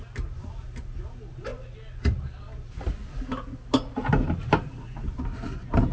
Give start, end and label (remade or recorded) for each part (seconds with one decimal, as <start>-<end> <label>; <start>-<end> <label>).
0.0-5.9 recorded